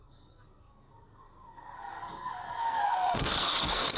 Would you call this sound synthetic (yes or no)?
yes